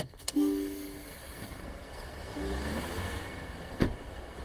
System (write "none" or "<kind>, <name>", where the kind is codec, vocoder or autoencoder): codec, SNAC